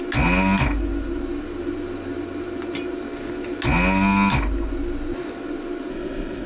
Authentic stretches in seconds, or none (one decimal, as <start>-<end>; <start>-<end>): 0.0-5.9